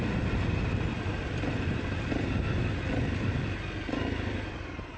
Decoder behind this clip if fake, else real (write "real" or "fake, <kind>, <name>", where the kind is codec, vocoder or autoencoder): real